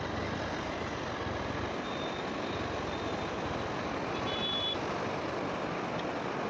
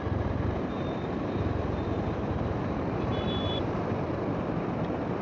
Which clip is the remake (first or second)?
second